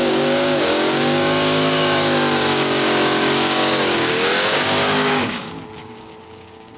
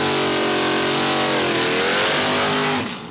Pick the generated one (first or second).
first